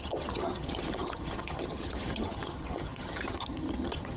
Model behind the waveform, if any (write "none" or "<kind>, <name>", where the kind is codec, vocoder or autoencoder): vocoder, HiFi-GAN